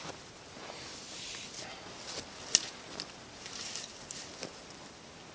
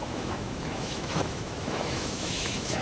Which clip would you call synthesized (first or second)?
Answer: second